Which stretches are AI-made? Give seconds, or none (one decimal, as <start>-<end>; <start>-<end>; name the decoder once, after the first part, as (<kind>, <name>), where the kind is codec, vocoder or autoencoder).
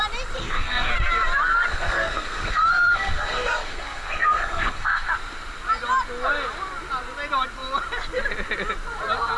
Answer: 0.4-0.9 (codec, SNAC); 1.7-5.1